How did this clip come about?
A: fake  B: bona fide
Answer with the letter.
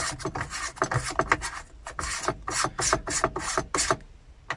B